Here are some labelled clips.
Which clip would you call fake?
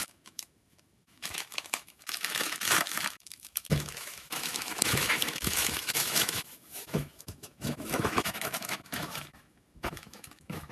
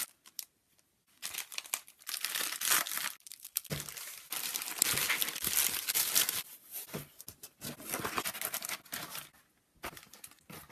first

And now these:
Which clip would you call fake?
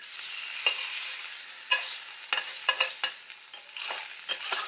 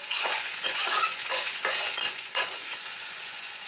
second